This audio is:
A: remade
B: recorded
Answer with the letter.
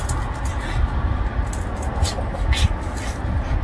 B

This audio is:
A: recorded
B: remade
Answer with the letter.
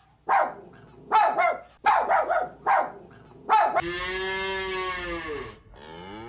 A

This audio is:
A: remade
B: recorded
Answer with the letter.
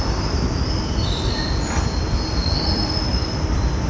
B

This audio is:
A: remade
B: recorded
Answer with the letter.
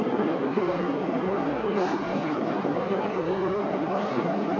A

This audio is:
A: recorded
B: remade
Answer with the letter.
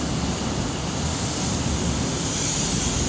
A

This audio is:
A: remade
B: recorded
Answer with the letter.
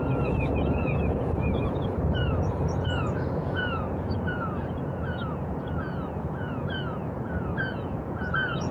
A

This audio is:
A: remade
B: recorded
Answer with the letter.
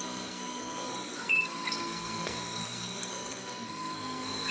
A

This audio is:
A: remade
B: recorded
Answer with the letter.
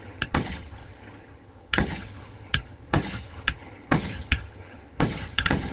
A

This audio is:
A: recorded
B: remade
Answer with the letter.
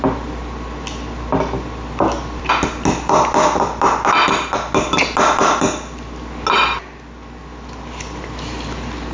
A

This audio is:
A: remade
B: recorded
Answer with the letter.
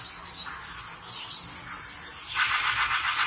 B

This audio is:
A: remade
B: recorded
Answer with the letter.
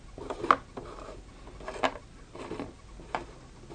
B